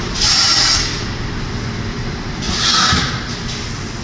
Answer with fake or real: real